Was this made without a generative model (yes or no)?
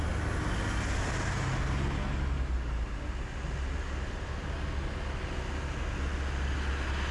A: yes